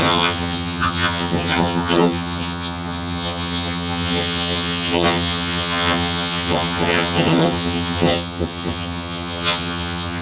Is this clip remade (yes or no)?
yes